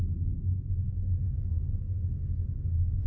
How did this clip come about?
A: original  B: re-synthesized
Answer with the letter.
A